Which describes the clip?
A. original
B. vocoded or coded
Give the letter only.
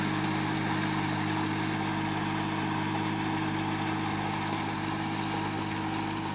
A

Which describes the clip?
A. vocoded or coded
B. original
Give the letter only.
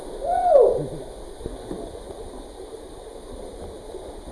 B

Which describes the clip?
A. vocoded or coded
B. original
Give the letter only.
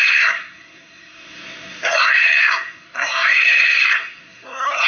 A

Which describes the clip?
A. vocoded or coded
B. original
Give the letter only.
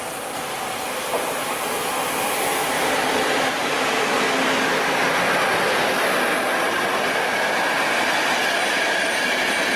B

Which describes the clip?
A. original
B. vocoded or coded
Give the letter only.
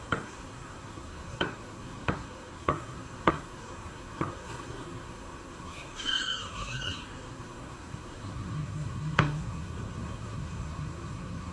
B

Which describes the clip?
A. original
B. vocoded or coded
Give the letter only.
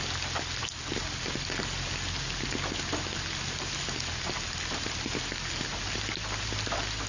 A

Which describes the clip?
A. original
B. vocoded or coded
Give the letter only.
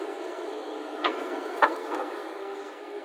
B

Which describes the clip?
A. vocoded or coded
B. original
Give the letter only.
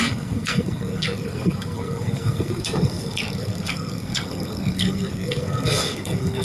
A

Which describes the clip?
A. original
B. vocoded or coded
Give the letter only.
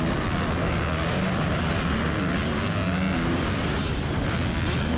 A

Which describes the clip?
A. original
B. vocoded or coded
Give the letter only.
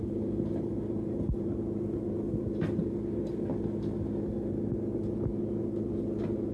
A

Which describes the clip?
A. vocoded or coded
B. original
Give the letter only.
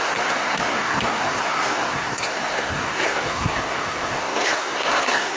A